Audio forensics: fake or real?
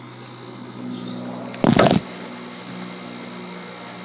real